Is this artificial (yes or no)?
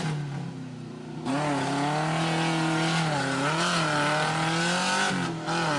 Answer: no